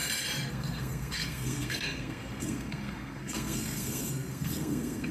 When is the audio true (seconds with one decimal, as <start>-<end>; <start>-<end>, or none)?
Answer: 0.0-0.5